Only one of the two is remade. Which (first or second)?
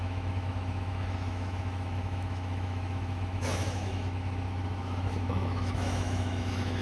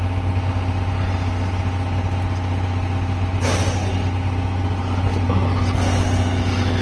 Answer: first